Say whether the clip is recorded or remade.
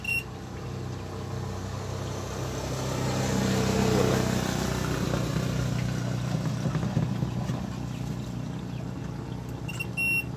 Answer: recorded